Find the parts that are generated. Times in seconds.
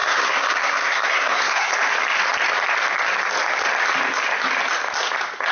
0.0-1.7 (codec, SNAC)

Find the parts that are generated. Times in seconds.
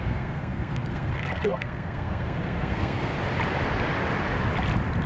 0.0-3.1 (codec, SNAC)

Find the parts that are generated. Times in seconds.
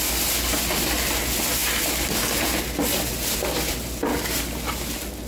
none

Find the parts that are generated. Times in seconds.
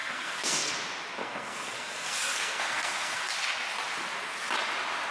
0.0-0.7 (codec, SNAC); 1.2-3.3